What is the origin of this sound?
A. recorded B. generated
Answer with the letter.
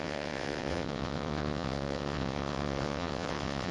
B